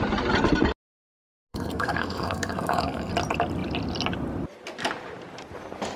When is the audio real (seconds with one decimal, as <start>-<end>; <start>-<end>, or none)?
0.0-1.5; 3.1-6.0